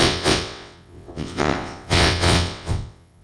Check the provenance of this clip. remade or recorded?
remade